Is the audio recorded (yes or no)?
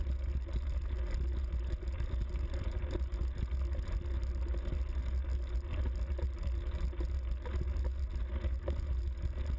yes